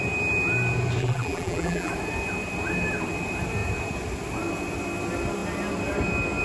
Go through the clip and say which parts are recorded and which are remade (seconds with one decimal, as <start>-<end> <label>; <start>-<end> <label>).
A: 0.0-1.0 recorded; 1.0-1.9 remade; 1.9-6.4 recorded